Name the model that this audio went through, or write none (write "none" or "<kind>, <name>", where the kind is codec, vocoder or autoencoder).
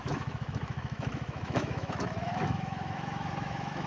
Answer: autoencoder, DAC-VAE